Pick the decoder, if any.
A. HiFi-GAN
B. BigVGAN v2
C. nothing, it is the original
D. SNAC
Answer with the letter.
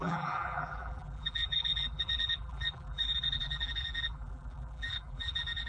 B